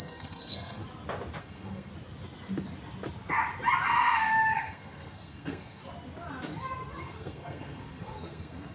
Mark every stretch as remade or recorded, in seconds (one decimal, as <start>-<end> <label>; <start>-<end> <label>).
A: 0.0-0.8 remade; 0.8-1.4 recorded; 1.4-1.9 remade; 1.9-4.0 recorded; 4.0-5.8 remade; 5.8-7.0 recorded; 7.0-8.7 remade